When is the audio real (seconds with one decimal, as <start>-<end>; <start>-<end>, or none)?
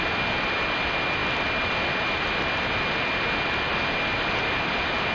0.0-5.1